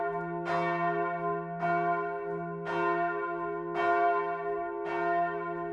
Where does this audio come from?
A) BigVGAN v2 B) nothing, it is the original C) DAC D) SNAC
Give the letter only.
B